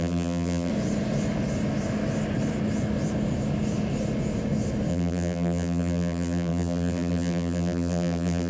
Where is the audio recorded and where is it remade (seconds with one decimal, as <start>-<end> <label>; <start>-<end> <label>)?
0.0-0.7 remade; 0.7-4.9 recorded; 4.9-8.5 remade